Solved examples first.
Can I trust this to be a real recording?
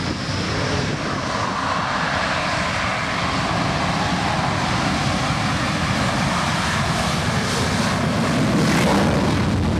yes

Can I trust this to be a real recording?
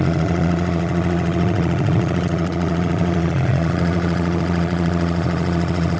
no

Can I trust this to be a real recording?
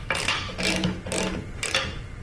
yes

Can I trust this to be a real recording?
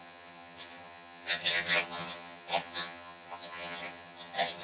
no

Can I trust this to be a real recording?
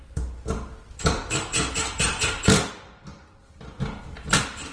yes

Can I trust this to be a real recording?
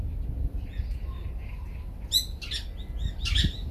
yes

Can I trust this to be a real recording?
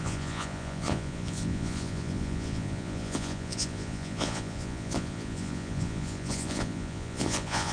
no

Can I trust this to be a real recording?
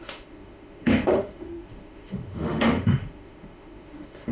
no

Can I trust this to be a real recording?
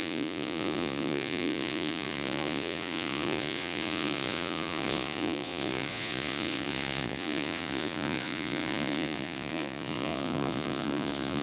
no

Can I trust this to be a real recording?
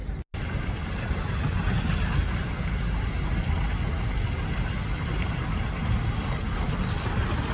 yes